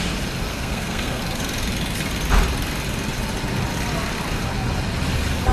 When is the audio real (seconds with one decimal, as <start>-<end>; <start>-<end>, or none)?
0.0-0.5; 1.2-5.5